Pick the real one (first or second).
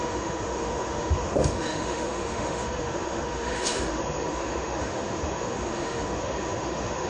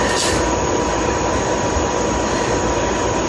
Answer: second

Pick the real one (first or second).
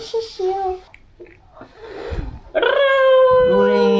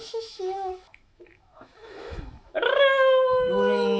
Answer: first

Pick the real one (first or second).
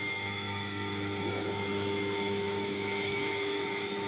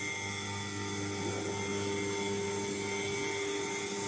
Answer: second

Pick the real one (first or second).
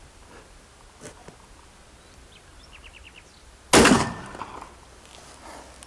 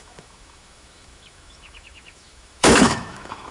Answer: first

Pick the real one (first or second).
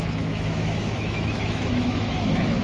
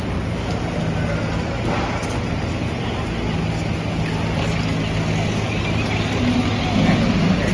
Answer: second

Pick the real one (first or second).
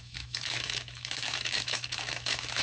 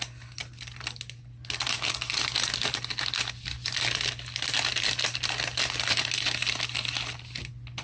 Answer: second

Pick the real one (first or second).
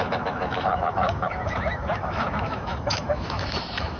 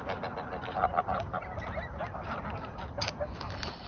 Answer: second